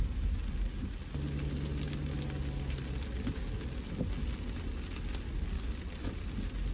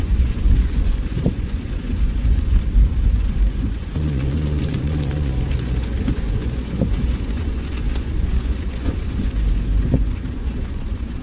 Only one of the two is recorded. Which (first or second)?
first